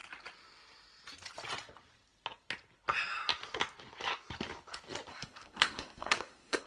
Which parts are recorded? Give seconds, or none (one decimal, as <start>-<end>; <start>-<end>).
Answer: 0.0-5.1